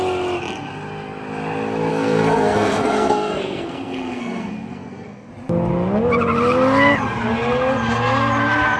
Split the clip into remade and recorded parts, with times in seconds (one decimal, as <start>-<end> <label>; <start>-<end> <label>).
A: 0.0-1.9 recorded; 1.9-5.3 remade; 5.3-8.8 recorded